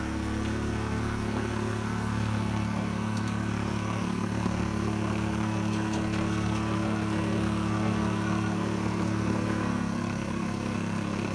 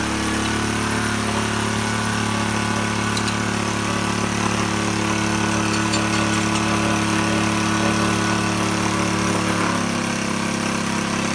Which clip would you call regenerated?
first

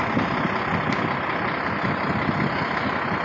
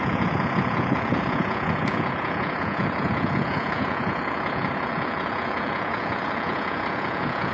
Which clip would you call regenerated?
second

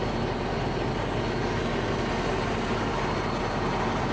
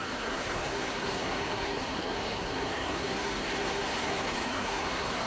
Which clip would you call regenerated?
second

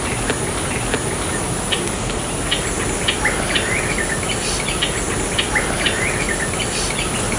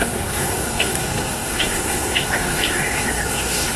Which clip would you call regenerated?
second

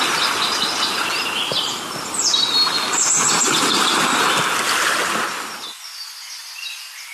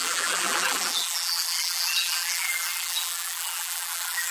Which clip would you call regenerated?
second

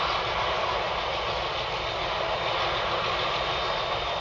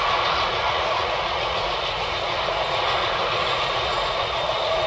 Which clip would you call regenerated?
second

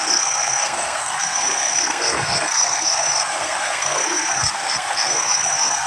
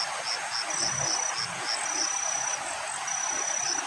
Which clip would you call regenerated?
first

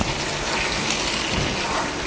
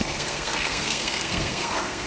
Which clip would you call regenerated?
second